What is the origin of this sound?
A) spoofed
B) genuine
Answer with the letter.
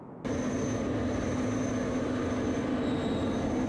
B